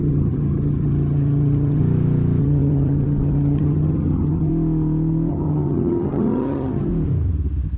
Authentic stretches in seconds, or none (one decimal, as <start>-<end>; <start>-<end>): 1.8-2.4; 4.5-5.3; 6.9-7.8